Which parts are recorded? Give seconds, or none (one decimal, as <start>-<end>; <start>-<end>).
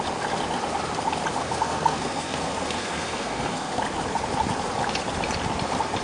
0.0-1.4; 3.8-6.0